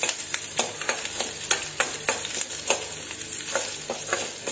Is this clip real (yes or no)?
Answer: yes